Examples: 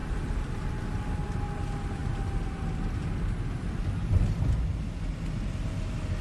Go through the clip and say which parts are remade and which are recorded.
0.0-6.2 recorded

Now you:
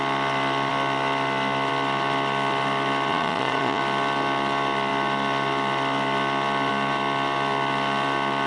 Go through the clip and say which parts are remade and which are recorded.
0.0-3.1 recorded; 3.1-3.8 remade; 3.8-8.5 recorded

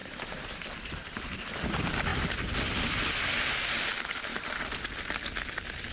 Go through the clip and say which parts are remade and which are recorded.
0.0-0.6 remade; 0.6-4.3 recorded; 4.3-4.8 remade; 4.8-5.9 recorded

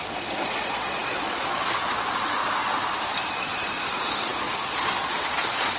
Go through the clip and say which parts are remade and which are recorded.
0.0-2.4 remade; 2.4-3.3 recorded; 3.3-5.8 remade

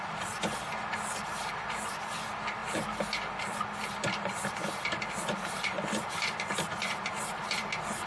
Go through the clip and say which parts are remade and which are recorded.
0.0-8.1 recorded

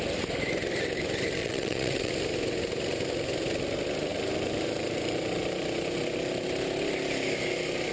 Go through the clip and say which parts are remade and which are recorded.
0.0-1.4 recorded; 1.4-2.1 remade; 2.1-7.9 recorded